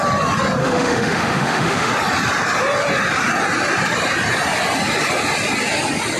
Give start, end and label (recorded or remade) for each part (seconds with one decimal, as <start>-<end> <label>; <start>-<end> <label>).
0.0-0.6 recorded; 0.6-1.9 remade; 1.9-6.2 recorded